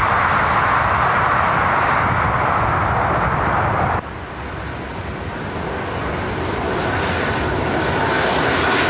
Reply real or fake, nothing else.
real